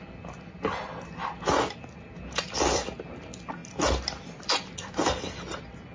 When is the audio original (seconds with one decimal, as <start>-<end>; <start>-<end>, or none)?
0.0-5.9